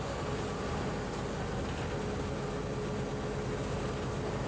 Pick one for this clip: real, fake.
real